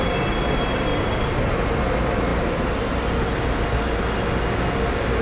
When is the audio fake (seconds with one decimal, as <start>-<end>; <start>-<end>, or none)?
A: 0.9-1.5